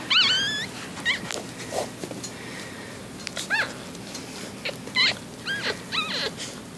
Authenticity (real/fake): real